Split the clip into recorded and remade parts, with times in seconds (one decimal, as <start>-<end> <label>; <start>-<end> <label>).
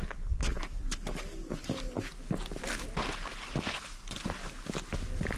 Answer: 0.0-0.5 remade; 0.5-1.6 recorded; 1.6-4.4 remade; 4.4-5.4 recorded